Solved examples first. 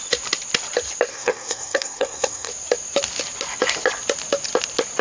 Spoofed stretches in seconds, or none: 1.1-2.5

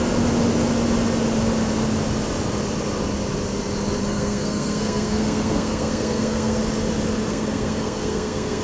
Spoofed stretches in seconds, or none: 4.0-6.6; 7.3-8.6

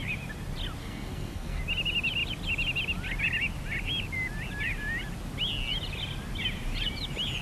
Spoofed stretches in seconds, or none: 0.8-1.6

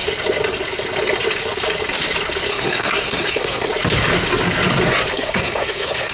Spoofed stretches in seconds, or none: 2.5-3.7; 5.1-6.1

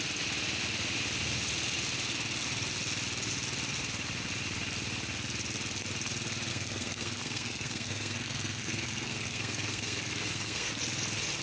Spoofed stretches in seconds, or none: 6.5-10.7

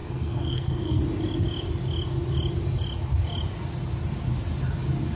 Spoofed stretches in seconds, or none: 0.0-1.0

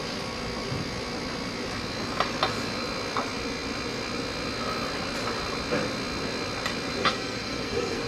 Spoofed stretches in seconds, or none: 7.0-8.1

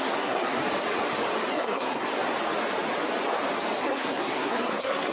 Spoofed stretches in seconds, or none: 0.0-0.6; 1.5-2.1; 3.8-5.1